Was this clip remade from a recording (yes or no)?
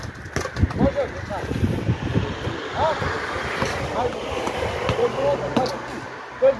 no